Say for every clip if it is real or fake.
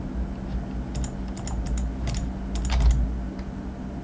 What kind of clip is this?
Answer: real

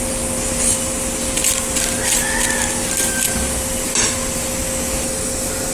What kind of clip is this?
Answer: real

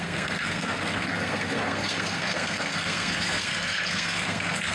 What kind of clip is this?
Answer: fake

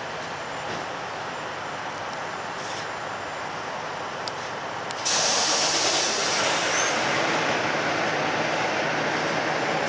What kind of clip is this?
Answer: real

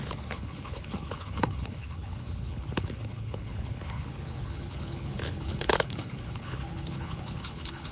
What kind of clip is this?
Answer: fake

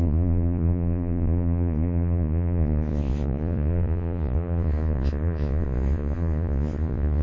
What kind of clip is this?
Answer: fake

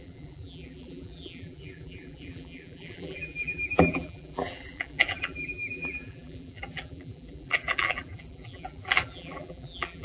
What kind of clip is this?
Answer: fake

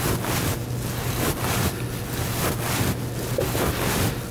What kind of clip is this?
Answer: real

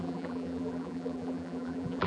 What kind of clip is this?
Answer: fake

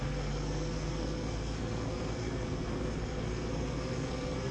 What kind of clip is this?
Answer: fake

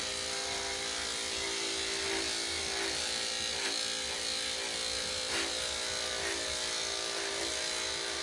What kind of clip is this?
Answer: real